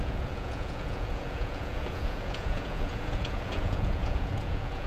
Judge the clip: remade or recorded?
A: remade